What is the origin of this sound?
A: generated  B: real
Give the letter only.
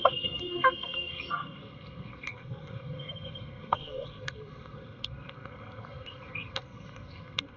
A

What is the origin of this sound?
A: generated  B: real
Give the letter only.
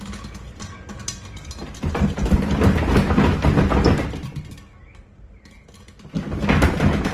B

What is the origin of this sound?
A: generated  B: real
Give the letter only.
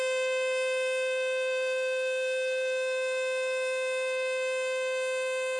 A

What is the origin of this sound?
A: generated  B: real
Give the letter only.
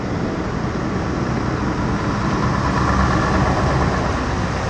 B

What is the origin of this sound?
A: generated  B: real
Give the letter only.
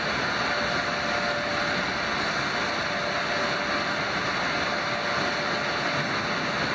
B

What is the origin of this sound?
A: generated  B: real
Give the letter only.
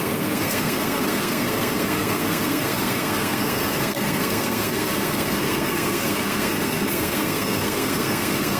A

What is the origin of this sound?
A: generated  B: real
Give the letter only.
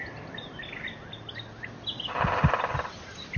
B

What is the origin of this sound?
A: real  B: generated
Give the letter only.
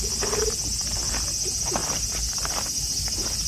A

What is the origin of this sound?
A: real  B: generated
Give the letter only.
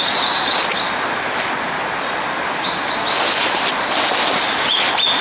A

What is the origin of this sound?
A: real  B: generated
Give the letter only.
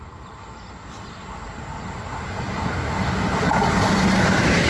A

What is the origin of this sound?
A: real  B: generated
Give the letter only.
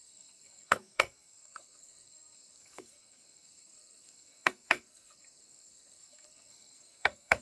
B